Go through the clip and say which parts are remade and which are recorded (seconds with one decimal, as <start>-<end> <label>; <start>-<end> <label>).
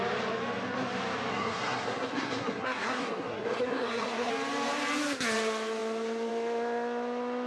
0.0-1.3 recorded; 1.3-4.3 remade; 4.3-7.5 recorded